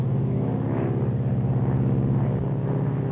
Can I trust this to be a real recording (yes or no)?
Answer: yes